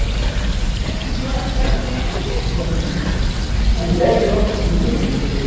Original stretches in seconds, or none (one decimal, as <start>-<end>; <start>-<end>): 0.0-5.5